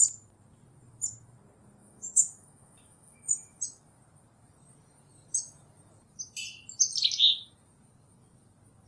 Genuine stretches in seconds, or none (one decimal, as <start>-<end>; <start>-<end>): 0.0-1.8; 3.6-8.9